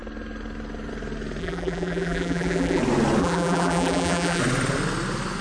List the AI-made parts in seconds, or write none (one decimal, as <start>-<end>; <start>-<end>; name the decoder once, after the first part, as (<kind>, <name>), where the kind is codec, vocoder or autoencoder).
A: 1.4-2.8 (vocoder, BigVGAN v2); 3.2-4.4